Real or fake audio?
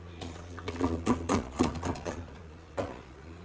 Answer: fake